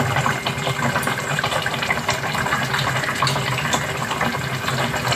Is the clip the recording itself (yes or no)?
no